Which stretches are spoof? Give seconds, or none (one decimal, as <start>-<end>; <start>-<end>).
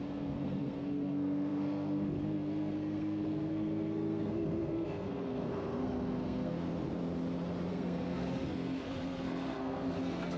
0.0-6.7; 7.7-10.4